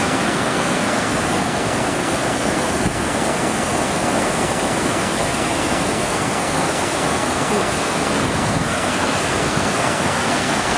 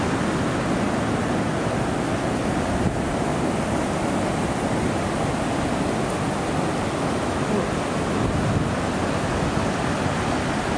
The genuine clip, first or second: second